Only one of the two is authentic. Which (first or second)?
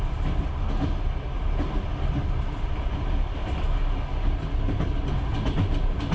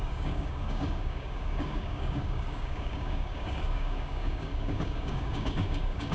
first